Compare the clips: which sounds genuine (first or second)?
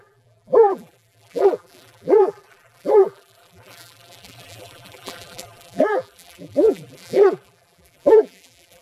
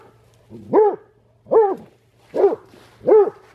second